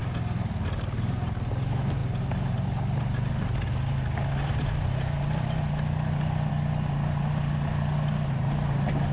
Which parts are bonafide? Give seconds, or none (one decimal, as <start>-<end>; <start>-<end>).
0.0-9.1